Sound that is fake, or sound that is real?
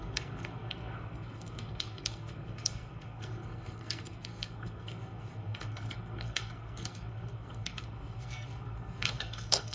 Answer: fake